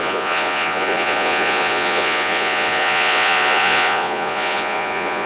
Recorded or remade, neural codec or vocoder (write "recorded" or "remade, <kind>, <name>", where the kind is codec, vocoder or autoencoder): remade, vocoder, Vocos